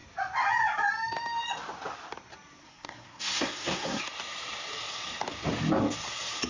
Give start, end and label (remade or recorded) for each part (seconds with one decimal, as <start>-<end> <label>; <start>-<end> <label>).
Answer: 0.0-2.6 recorded; 2.6-4.0 remade; 4.0-6.5 recorded